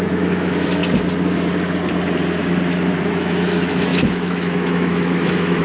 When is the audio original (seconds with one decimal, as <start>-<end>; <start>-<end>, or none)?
0.8-2.9